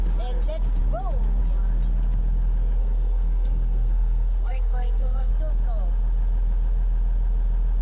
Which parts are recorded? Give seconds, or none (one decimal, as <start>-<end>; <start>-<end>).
0.0-2.8; 5.3-7.8